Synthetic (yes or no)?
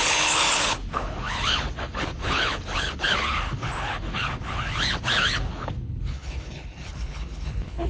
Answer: yes